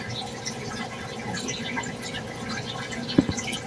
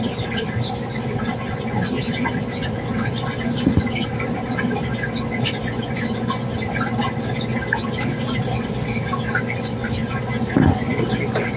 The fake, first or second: first